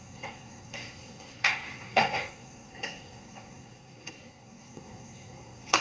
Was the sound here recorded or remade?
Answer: remade